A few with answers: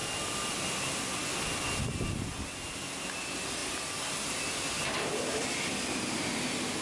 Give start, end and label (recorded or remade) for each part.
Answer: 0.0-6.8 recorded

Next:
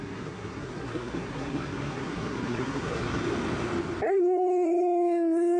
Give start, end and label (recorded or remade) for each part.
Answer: 0.0-3.2 remade; 3.2-4.1 recorded; 4.1-5.6 remade

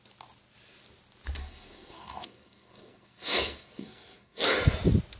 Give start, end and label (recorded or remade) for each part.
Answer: 0.0-1.4 recorded; 1.4-4.5 remade; 4.5-5.2 recorded